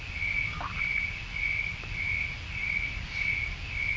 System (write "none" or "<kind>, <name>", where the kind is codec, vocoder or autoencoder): none